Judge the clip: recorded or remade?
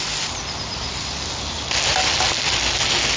recorded